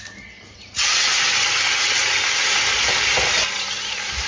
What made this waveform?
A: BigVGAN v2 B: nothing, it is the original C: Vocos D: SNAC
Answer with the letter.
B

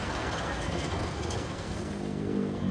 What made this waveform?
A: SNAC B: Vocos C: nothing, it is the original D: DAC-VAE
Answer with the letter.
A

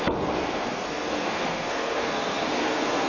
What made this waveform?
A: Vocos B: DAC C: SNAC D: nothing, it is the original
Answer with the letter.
C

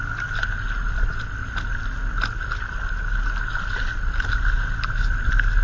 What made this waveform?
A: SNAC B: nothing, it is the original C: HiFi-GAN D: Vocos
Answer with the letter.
B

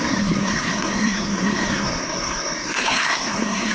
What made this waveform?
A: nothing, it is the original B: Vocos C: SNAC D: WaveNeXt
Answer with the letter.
C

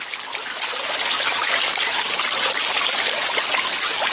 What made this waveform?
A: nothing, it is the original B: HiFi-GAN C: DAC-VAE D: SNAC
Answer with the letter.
A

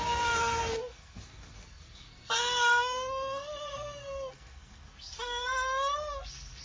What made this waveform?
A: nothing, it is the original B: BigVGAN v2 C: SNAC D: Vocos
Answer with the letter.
C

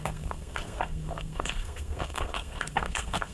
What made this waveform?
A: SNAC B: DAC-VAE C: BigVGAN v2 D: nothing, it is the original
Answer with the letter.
A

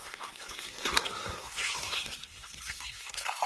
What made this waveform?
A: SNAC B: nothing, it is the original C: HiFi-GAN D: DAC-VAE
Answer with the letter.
A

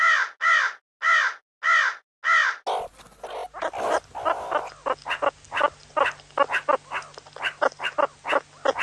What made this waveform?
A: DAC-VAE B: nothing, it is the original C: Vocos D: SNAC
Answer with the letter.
B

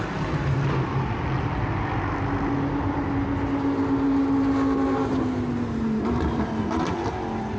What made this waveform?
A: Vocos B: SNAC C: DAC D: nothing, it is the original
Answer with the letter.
D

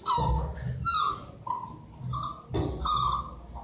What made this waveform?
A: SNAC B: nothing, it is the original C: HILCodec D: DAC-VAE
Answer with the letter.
B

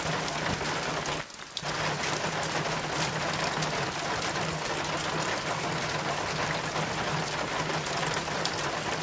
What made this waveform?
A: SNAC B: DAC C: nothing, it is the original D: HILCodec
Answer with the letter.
C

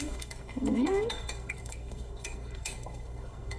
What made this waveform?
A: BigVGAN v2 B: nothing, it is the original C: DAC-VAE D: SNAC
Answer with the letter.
D